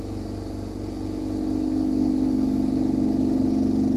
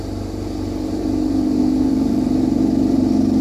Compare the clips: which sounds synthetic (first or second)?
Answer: second